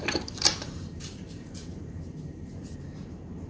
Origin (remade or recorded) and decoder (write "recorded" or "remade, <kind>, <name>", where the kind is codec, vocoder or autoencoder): remade, vocoder, BigVGAN v2